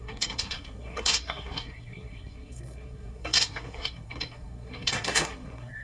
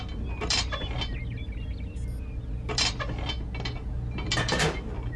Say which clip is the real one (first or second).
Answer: second